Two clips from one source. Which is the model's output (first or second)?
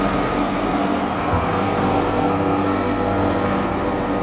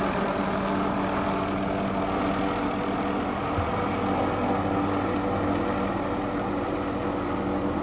first